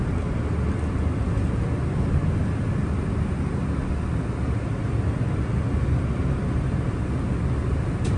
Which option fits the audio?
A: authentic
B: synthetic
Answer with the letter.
A